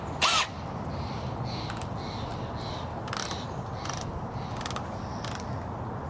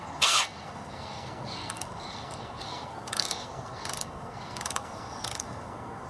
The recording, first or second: first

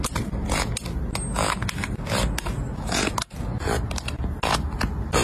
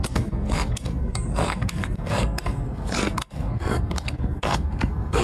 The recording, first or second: first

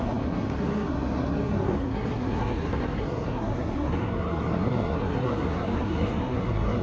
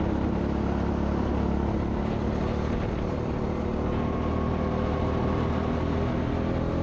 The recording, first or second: second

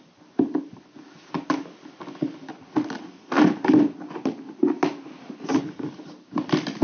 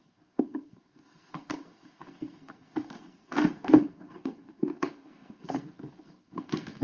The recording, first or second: first